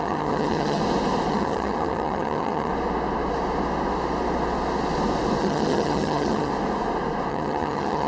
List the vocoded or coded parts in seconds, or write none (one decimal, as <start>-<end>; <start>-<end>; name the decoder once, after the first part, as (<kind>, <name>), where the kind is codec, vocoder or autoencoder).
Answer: 0.0-0.8 (vocoder, HiFi-GAN); 1.3-2.7; 5.4-6.5; 7.3-8.1